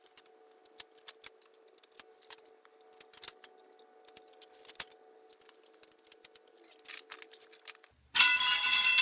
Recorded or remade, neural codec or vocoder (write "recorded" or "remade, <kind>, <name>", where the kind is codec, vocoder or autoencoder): recorded